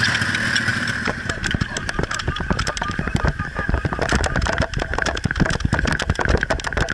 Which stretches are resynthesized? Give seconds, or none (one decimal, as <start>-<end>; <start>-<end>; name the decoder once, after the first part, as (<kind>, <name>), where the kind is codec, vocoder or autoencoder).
0.7-3.9 (vocoder, BigVGAN v2)